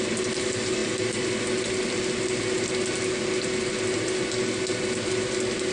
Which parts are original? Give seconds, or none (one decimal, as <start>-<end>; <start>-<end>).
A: 0.0-5.7